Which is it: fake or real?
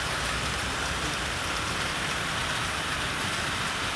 real